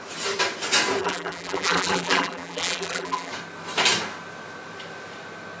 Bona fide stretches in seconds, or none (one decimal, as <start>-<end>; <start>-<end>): 0.0-1.0; 3.3-5.6